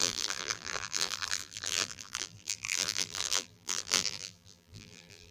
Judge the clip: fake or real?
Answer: fake